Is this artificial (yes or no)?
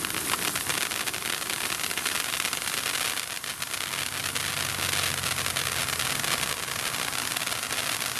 no